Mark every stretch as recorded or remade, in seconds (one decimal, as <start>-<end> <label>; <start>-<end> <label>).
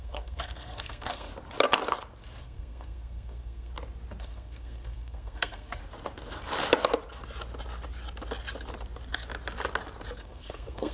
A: 0.0-1.3 remade; 1.3-2.4 recorded; 2.4-3.7 remade; 3.7-4.2 recorded; 4.2-5.8 remade; 5.8-10.2 recorded; 10.2-10.9 remade